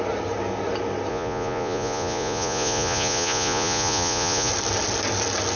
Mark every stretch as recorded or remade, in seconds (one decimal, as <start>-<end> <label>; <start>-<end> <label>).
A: 0.0-1.1 recorded; 1.1-4.5 remade; 4.5-5.6 recorded